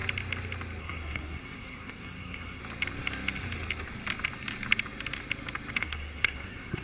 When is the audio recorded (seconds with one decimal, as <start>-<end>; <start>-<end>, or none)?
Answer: 0.0-0.8; 2.6-5.8